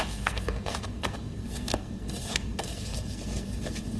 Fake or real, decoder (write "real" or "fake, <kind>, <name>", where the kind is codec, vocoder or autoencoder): fake, codec, SNAC